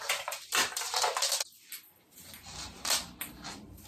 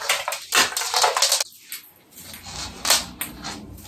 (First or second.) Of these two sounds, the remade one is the first